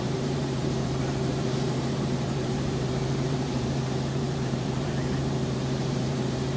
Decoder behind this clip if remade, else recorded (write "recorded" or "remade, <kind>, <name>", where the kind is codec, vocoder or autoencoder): remade, vocoder, BigVGAN v2